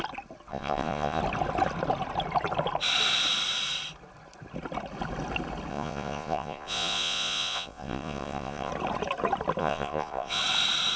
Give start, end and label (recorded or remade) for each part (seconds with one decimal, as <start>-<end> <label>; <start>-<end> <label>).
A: 0.0-0.5 recorded; 0.5-1.2 remade; 1.2-5.7 recorded; 5.7-8.7 remade; 8.7-9.6 recorded; 9.6-10.4 remade; 10.4-11.0 recorded